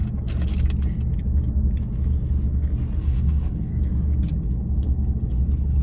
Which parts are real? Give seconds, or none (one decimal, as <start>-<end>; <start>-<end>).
0.0-3.0; 3.7-4.3